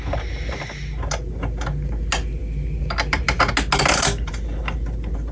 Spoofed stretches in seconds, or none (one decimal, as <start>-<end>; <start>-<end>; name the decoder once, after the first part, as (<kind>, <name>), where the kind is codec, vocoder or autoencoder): none

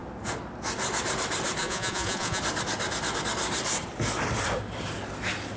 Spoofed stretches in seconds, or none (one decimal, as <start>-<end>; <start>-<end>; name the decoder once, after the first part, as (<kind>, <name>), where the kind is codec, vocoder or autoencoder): 1.6-2.4 (vocoder, Vocos)

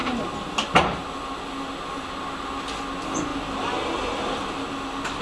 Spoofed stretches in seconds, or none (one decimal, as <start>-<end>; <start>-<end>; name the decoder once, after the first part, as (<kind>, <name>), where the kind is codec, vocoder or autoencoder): none

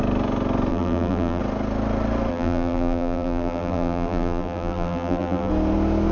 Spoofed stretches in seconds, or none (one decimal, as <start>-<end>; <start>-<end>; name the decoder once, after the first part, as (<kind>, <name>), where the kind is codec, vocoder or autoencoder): 0.7-1.4 (vocoder, BigVGAN v2); 2.3-5.5

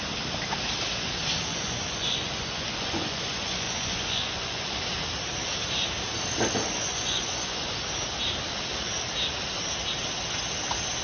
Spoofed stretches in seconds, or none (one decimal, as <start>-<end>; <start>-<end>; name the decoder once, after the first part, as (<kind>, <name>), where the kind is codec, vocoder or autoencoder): 1.5-4.8 (vocoder, Vocos); 6.8-7.7

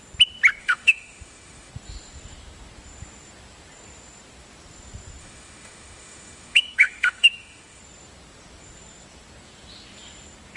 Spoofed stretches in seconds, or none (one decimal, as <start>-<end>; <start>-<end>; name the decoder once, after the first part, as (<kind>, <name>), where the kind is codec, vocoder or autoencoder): 0.6-1.7 (autoencoder, DAC-VAE); 5.2-7.8

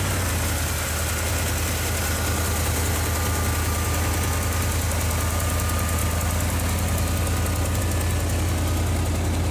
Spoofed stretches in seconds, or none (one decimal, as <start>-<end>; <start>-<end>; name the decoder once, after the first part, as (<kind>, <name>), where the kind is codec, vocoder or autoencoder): none

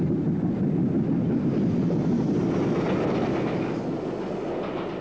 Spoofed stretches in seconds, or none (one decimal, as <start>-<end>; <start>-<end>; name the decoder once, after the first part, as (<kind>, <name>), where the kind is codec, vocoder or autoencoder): none